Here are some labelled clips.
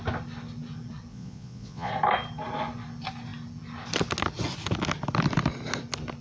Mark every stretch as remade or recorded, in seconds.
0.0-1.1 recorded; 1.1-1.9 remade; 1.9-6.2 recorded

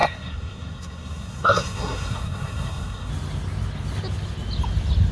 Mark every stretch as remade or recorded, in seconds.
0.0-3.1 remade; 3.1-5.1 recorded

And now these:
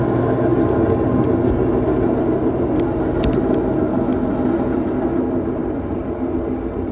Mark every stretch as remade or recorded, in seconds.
0.0-5.6 recorded; 5.6-6.3 remade; 6.3-6.9 recorded